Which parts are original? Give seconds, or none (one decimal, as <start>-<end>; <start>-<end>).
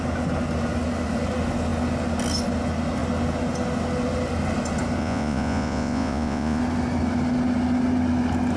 0.0-5.0; 6.6-8.6